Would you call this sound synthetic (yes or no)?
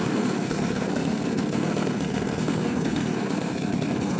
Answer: yes